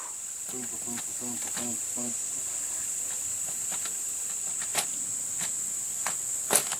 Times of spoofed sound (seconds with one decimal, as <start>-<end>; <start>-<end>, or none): none